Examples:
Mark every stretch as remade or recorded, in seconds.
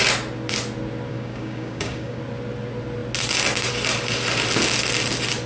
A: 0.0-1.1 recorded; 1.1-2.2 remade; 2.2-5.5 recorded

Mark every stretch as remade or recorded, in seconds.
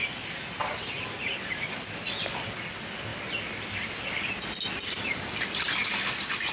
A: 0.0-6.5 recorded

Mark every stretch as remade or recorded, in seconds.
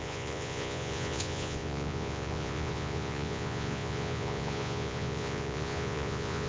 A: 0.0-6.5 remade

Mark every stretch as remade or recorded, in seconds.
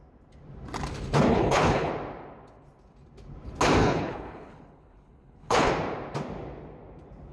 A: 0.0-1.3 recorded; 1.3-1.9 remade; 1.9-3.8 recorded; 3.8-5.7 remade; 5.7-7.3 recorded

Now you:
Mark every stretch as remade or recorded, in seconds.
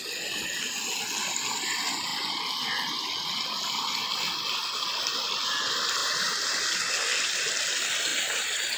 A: 0.0-6.0 recorded; 6.0-6.6 remade; 6.6-8.1 recorded; 8.1-8.8 remade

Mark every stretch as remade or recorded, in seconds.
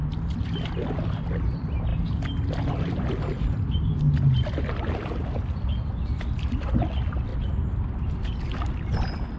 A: 0.0-7.3 recorded; 7.3-8.3 remade; 8.3-9.4 recorded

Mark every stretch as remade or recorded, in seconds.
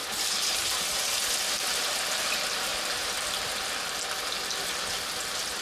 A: 0.0-2.0 remade; 2.0-2.7 recorded; 2.7-3.3 remade; 3.3-5.6 recorded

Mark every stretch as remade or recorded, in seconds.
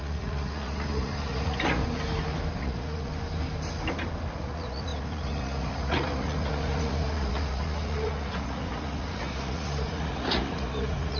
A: 0.0-1.8 remade; 1.8-2.6 recorded; 2.6-3.1 remade; 3.1-4.3 recorded; 4.3-11.2 remade